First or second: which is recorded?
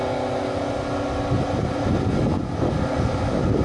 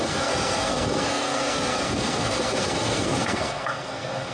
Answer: first